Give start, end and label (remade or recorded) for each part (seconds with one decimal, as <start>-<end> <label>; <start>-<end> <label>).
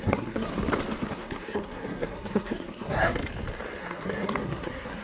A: 0.0-0.5 remade; 0.5-1.1 recorded; 1.1-3.2 remade; 3.2-3.8 recorded; 3.8-5.0 remade